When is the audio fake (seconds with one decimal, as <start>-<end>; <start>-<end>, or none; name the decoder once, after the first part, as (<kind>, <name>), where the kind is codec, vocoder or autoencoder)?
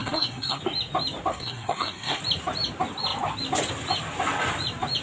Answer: 0.0-0.6 (codec, SNAC); 1.3-2.2